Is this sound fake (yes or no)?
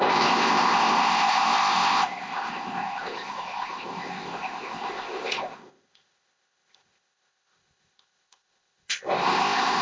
yes